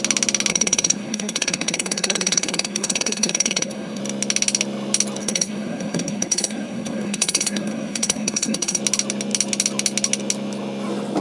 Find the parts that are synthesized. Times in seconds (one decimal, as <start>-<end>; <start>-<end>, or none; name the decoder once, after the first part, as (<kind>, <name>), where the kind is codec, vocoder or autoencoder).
0.5-4.0 (codec, SNAC); 5.2-8.8